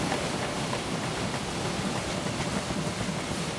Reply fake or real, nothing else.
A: real